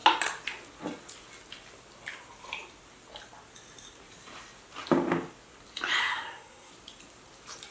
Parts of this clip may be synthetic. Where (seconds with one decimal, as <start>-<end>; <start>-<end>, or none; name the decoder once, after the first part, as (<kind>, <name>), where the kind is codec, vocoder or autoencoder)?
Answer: 6.0-6.7 (codec, SNAC)